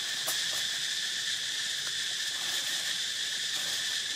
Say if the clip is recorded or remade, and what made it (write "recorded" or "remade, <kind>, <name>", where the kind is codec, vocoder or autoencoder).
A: recorded